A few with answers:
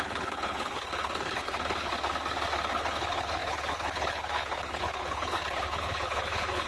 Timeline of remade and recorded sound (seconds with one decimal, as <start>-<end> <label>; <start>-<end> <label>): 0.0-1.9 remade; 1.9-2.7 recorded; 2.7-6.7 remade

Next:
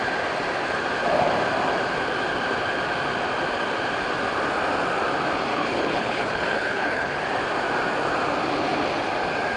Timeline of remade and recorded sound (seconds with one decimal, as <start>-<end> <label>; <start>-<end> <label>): 0.0-5.5 recorded; 5.5-7.2 remade; 7.2-9.6 recorded

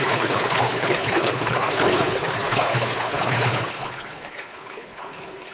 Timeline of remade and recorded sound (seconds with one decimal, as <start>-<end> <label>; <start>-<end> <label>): 0.0-5.5 remade

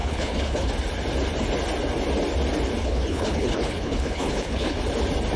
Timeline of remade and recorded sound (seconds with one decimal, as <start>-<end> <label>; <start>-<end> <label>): 0.0-0.7 remade; 0.7-2.8 recorded; 2.8-4.8 remade; 4.8-5.4 recorded

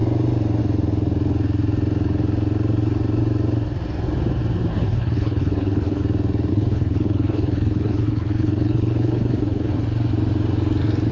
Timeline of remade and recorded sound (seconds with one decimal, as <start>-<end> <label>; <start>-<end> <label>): 0.0-4.7 recorded; 4.7-6.0 remade; 6.0-6.5 recorded; 6.5-9.7 remade; 9.7-11.1 recorded

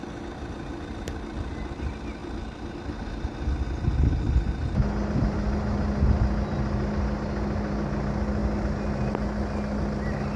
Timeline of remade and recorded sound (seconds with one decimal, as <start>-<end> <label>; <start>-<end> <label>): 0.0-10.4 recorded